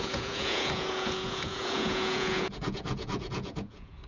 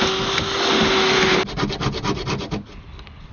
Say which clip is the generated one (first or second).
first